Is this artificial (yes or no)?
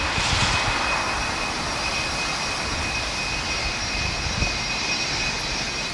no